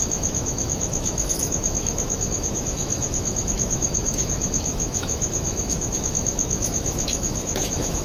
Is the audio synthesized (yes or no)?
yes